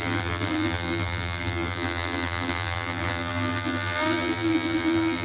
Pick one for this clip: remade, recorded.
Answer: remade